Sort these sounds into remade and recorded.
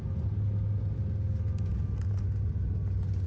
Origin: recorded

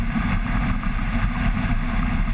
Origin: remade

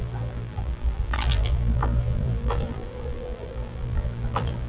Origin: remade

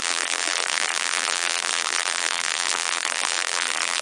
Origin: remade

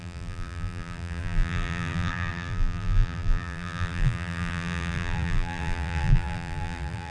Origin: remade